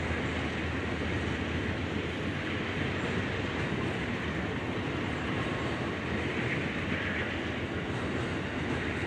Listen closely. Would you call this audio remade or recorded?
recorded